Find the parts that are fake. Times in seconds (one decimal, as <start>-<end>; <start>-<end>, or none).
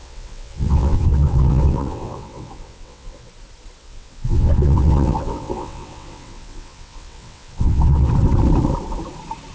0.0-3.3; 3.8-8.1